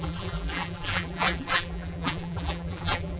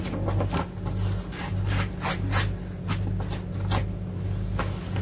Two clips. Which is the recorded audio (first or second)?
second